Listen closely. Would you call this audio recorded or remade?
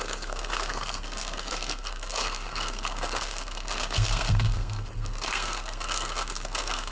remade